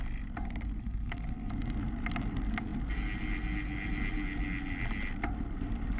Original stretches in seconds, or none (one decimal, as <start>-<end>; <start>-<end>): 0.0-0.8; 1.5-6.0